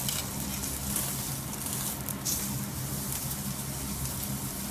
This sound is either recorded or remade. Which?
recorded